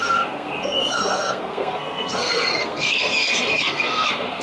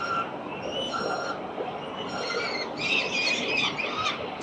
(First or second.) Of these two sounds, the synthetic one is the first